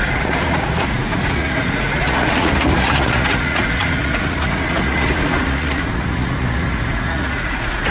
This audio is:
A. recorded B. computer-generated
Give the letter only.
B